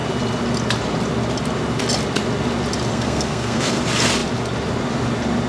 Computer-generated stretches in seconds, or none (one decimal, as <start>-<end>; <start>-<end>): 2.9-3.8